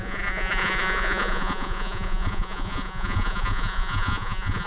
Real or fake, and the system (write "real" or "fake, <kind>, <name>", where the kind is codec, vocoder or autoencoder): fake, vocoder, Vocos